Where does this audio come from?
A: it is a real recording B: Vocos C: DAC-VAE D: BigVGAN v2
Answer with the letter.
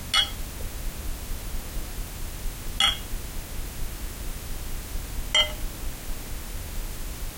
A